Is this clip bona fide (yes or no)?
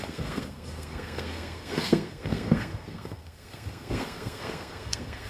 no